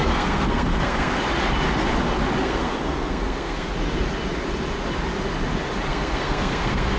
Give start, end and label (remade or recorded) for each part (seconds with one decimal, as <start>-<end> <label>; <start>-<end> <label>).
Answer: 0.0-1.2 remade; 1.2-2.4 recorded; 2.4-3.7 remade; 3.7-5.9 recorded; 5.9-7.0 remade